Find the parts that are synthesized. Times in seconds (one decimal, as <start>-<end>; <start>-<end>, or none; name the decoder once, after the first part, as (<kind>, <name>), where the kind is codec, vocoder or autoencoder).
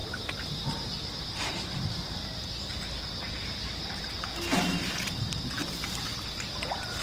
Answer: 0.0-4.1 (vocoder, BigVGAN v2)